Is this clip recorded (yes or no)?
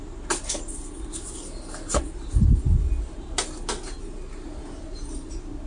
yes